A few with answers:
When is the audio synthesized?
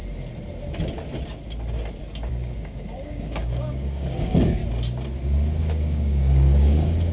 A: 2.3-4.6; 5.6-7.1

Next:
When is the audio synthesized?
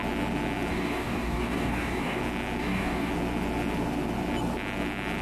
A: 0.7-2.2; 2.6-3.1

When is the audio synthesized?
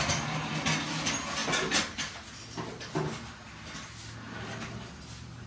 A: none